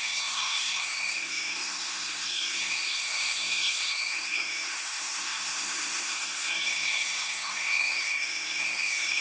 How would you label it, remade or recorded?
remade